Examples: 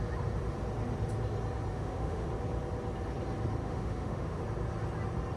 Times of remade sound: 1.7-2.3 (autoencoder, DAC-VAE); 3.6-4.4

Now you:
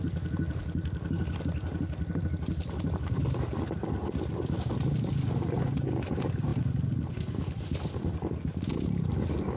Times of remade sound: none

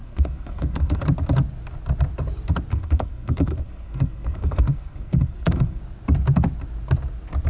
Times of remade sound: 0.0-1.0 (codec, SNAC); 2.7-5.8

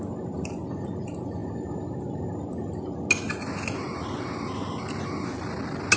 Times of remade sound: none

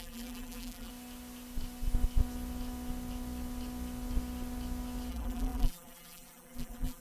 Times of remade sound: 0.0-0.9 (vocoder, BigVGAN v2); 5.1-7.0

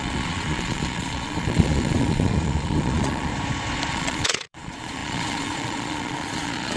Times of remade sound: 0.0-3.3 (vocoder, Vocos); 3.9-6.8

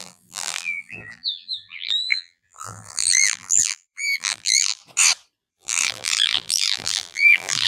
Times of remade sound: 0.0-4.8 (vocoder, BigVGAN v2); 5.5-7.7